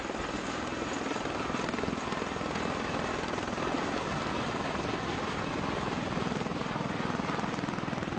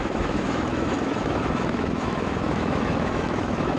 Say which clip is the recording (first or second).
first